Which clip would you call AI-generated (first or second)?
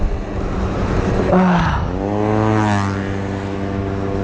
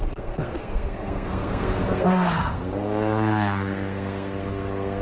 second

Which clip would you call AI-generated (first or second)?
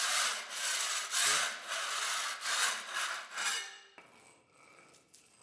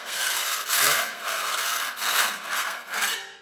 second